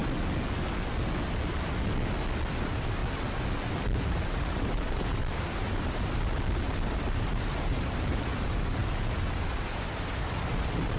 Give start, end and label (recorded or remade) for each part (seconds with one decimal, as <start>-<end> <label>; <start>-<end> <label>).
0.0-2.5 recorded; 2.5-3.0 remade; 3.0-3.7 recorded; 3.7-11.0 remade